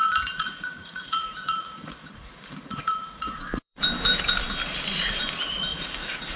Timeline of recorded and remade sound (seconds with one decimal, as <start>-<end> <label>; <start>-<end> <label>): 0.0-3.8 remade; 3.8-5.7 recorded; 5.7-6.4 remade